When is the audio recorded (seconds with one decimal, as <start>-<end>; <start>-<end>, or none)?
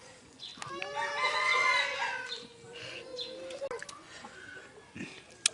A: 0.5-1.3; 3.1-3.9; 4.5-5.5